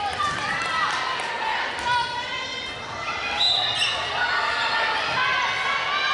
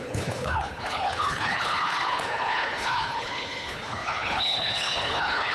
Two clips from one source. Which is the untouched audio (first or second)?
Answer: first